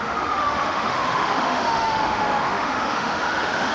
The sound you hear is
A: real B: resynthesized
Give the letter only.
B